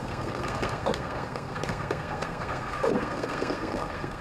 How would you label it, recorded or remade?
remade